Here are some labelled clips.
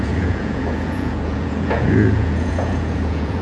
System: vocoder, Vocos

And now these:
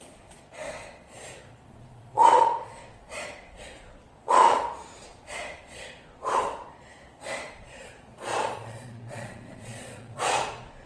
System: vocoder, Vocos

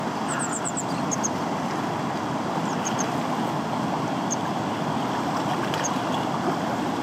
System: none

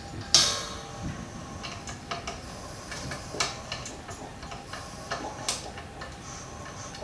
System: none